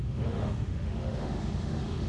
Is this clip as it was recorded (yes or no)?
no